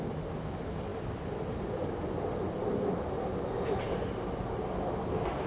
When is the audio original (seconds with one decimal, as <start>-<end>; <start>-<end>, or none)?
0.0-5.5